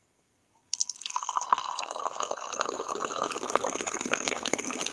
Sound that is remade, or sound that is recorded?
remade